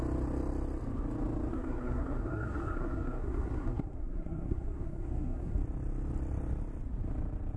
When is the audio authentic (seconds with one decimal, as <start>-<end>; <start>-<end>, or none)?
0.0-1.5; 5.6-7.6